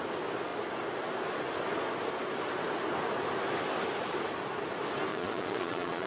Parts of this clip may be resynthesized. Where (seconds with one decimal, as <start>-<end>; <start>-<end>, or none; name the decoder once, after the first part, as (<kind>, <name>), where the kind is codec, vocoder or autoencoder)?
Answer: 5.1-6.1 (vocoder, Vocos)